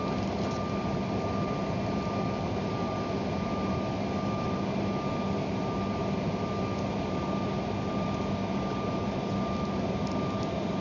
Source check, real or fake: real